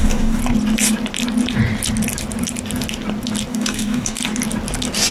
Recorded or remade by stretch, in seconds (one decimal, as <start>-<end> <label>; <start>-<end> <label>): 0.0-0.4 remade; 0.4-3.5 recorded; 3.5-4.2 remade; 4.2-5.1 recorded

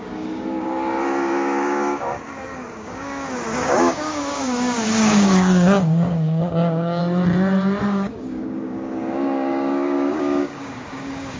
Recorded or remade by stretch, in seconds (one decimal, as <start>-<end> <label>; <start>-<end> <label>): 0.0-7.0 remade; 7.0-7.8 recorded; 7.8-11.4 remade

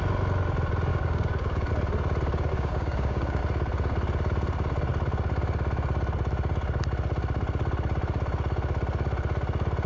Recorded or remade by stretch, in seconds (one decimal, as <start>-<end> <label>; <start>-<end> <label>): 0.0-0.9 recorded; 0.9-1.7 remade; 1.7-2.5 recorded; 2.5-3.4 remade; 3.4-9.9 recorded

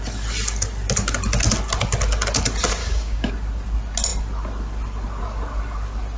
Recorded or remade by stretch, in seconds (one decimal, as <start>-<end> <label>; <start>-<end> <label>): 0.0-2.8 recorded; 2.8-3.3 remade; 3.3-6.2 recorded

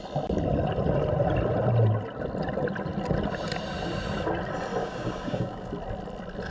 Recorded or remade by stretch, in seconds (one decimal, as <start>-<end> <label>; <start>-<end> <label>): 0.0-4.8 recorded; 4.8-5.7 remade; 5.7-6.5 recorded